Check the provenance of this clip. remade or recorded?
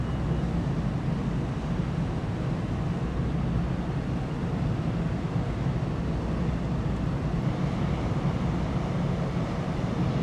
recorded